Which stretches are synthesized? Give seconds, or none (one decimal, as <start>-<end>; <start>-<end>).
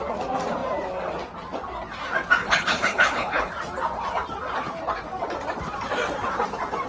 2.4-3.5